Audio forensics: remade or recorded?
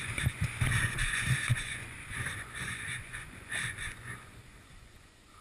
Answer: remade